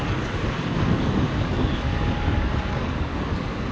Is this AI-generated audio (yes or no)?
yes